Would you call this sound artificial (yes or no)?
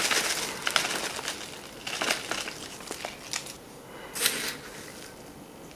no